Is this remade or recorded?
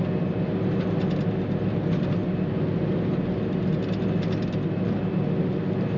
recorded